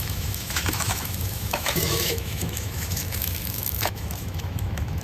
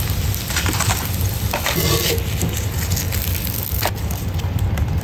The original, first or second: second